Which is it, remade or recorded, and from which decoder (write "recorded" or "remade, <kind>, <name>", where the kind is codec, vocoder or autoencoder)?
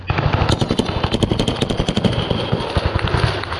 recorded